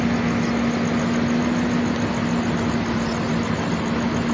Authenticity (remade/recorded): recorded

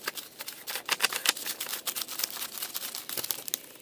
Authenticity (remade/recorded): recorded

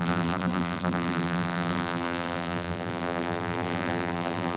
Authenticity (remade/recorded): remade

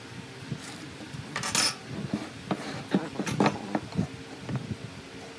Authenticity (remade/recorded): recorded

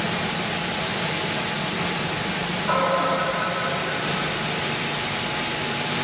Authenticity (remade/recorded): remade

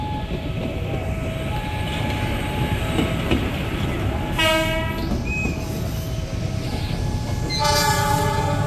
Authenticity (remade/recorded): recorded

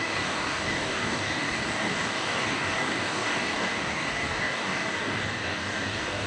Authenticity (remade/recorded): remade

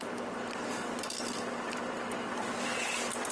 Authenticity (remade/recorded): recorded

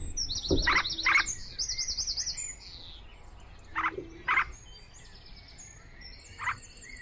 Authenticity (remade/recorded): recorded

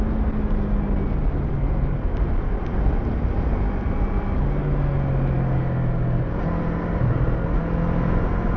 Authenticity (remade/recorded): recorded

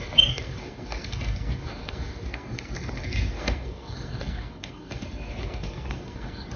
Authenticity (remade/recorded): remade